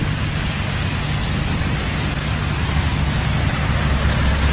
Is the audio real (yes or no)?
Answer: yes